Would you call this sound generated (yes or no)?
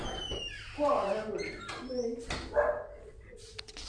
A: no